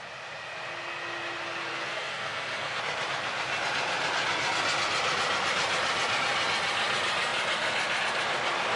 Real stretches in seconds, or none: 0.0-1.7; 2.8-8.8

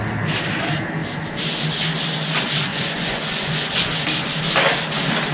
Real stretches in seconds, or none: 0.0-2.7; 3.9-5.3

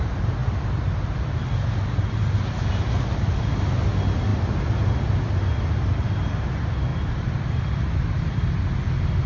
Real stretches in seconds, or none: 0.0-9.3

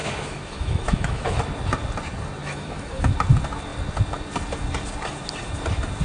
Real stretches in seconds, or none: 1.4-2.4; 3.1-6.0

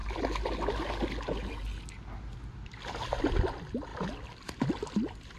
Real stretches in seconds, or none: 0.0-5.4

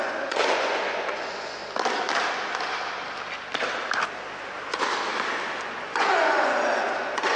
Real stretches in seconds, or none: 1.6-5.6